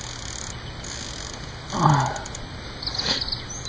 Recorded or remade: recorded